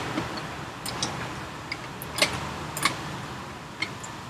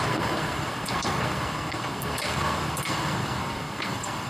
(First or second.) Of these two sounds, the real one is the first